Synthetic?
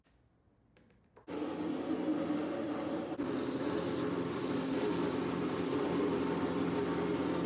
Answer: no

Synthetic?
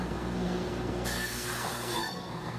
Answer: yes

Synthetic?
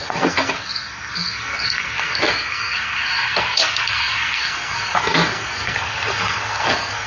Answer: yes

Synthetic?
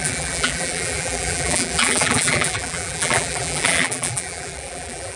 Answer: yes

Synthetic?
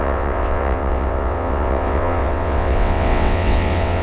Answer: yes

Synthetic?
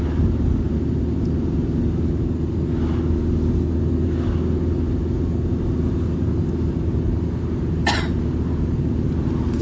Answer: no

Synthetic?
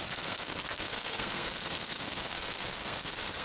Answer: yes